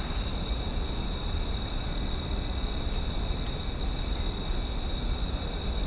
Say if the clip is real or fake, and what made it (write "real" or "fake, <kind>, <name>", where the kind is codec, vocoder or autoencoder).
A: real